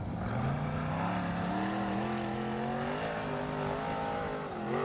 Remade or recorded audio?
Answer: recorded